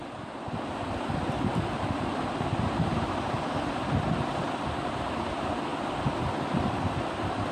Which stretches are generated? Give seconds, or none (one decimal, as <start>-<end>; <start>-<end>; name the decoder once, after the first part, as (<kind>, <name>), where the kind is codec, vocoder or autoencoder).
none